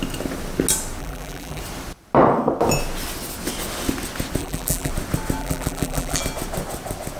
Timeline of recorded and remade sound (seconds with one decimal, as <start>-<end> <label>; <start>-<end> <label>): 0.0-1.0 recorded; 1.0-1.6 remade; 1.6-4.4 recorded; 4.4-4.9 remade; 4.9-5.4 recorded; 5.4-6.2 remade; 6.2-7.2 recorded